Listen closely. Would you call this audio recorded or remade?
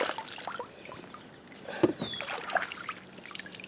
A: recorded